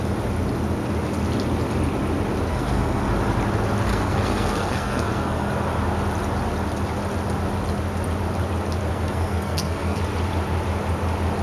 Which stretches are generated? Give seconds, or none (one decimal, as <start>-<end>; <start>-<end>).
2.5-3.1; 3.9-5.5; 8.9-10.0